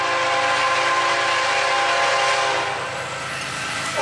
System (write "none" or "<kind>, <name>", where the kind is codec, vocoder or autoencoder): none